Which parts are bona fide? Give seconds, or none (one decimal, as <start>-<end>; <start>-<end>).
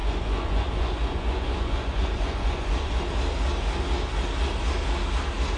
3.0-5.6